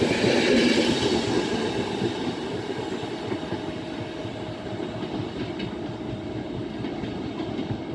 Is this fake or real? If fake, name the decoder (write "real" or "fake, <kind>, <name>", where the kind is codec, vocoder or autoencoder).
real